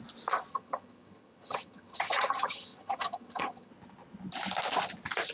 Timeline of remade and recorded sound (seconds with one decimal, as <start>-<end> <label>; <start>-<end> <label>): 0.0-0.5 recorded; 0.5-3.7 remade; 3.7-5.3 recorded